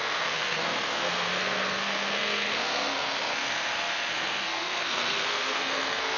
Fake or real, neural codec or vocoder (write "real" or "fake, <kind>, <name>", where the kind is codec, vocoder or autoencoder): fake, codec, SNAC